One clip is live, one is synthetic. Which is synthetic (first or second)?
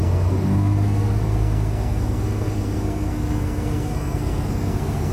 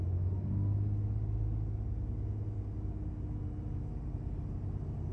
first